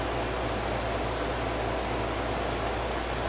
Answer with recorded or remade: recorded